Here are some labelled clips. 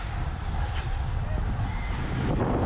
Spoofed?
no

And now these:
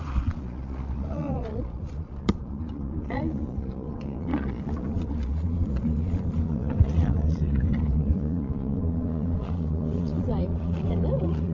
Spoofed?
yes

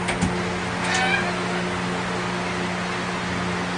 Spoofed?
no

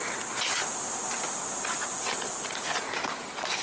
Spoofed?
yes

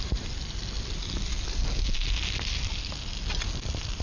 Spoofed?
no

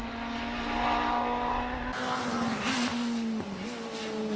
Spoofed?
no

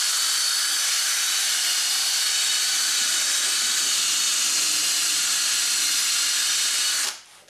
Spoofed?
no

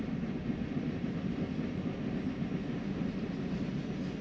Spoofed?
no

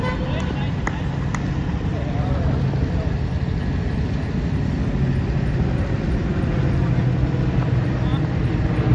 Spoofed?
no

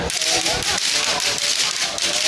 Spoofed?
no